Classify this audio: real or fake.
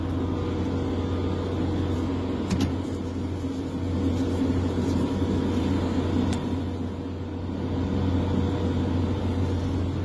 real